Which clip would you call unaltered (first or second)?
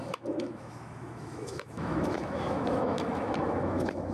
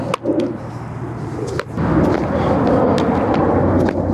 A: second